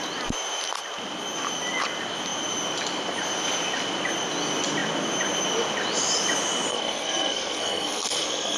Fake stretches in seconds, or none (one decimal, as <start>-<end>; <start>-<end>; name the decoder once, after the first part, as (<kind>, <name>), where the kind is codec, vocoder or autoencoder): 6.7-8.6 (codec, SNAC)